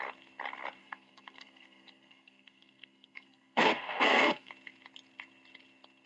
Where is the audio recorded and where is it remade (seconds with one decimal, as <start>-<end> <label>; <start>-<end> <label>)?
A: 0.0-0.8 recorded; 0.8-4.5 remade; 4.5-6.1 recorded